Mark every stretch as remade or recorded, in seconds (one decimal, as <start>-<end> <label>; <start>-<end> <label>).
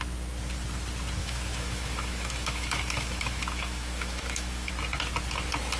0.0-1.2 recorded; 1.2-4.7 remade; 4.7-5.8 recorded